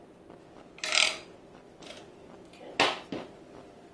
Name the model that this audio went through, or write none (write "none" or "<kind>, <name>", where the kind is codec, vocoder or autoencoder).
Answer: none